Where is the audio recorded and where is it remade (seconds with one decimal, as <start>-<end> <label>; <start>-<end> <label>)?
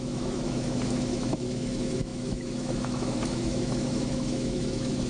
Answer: 0.0-5.1 remade